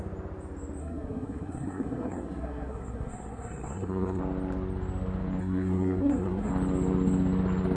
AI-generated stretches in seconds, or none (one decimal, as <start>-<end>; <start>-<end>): 0.8-4.2; 5.4-6.5